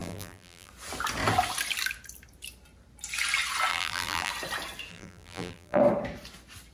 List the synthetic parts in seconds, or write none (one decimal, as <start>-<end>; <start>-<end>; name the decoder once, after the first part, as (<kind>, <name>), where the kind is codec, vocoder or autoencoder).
0.0-0.7 (vocoder, BigVGAN v2); 3.7-4.3; 4.9-5.8